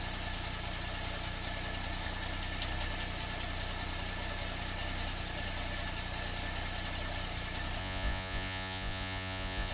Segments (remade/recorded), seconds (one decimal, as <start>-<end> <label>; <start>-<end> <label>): 0.0-7.8 recorded; 7.8-9.7 remade